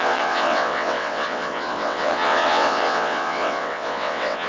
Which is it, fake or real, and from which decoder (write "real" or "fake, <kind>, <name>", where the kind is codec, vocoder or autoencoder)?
fake, vocoder, WaveNeXt